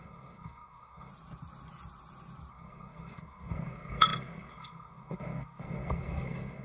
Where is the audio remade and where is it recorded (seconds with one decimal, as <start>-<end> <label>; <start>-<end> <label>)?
0.0-1.1 remade; 1.1-2.5 recorded; 2.5-6.6 remade